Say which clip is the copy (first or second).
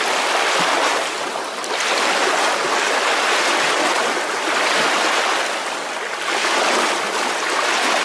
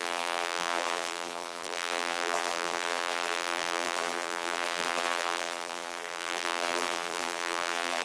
second